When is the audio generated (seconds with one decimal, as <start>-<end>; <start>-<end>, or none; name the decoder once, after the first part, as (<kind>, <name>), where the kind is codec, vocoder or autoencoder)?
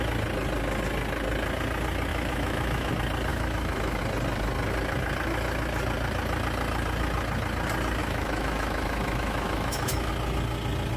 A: 2.1-2.9 (autoencoder, DAC-VAE); 3.3-4.0; 8.0-10.1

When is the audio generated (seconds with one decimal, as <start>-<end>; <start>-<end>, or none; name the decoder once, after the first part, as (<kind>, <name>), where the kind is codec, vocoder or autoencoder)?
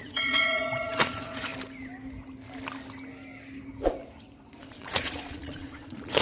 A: 0.0-1.5 (vocoder, Vocos); 4.6-6.2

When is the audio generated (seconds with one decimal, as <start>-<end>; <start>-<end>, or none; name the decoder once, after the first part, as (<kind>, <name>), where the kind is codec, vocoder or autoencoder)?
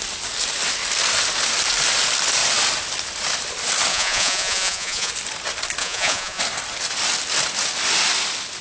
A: 3.9-5.1 (vocoder, Vocos); 5.8-6.4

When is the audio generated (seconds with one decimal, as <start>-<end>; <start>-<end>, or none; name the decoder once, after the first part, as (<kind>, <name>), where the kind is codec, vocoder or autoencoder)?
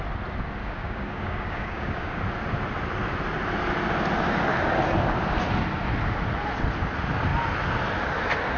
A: 0.6-2.2 (codec, DAC)